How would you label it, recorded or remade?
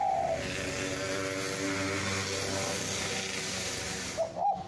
recorded